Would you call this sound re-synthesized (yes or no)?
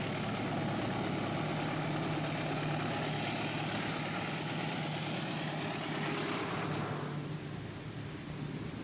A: no